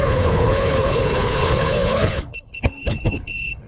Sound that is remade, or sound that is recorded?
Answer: remade